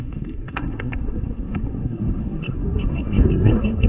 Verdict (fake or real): fake